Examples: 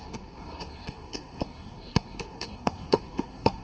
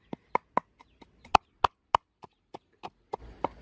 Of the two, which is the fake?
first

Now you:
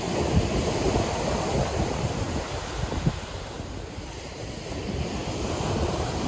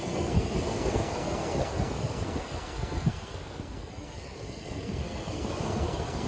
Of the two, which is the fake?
second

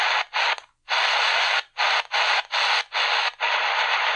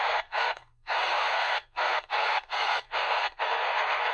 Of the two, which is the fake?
second